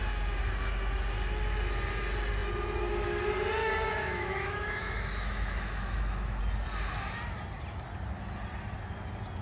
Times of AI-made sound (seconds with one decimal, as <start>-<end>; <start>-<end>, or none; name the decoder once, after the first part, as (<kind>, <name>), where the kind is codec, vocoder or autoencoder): 3.6-6.4 (autoencoder, DAC-VAE)